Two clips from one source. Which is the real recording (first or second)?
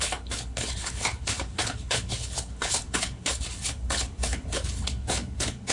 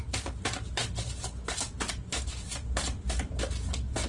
second